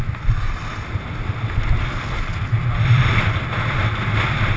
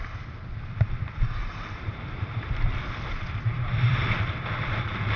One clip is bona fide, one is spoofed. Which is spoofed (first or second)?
second